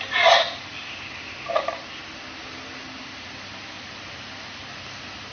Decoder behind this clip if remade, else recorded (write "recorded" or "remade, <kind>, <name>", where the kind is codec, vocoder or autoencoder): recorded